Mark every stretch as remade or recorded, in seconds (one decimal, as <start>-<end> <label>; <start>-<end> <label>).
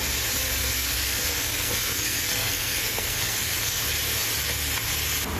0.0-0.6 recorded; 0.6-3.8 remade; 3.8-5.4 recorded